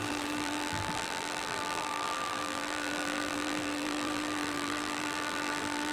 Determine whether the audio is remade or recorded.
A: remade